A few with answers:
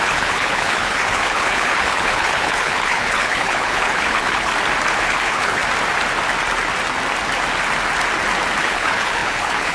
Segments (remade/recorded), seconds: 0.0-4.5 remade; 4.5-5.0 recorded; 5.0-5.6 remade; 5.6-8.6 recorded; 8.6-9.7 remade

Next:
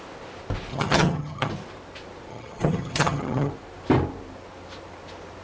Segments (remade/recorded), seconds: 0.0-0.7 recorded; 0.7-1.5 remade; 1.5-2.3 recorded; 2.3-3.5 remade; 3.5-5.4 recorded

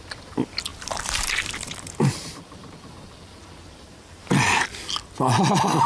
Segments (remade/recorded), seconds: 0.0-0.7 recorded; 0.7-4.2 remade; 4.2-5.9 recorded

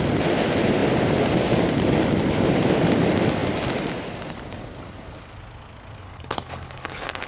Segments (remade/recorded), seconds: 0.0-6.0 recorded; 6.0-7.3 remade